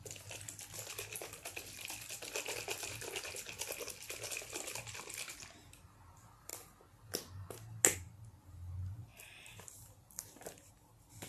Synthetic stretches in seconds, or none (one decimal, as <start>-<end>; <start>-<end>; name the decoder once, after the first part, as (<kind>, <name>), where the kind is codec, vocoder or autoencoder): 9.1-10.7 (vocoder, BigVGAN v2)